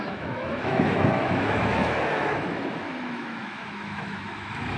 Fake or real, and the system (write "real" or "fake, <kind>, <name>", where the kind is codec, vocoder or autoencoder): fake, autoencoder, DAC-VAE